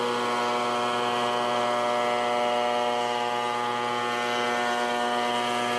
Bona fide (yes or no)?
yes